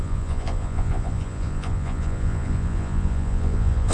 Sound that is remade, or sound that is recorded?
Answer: remade